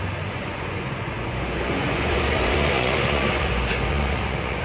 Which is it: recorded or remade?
remade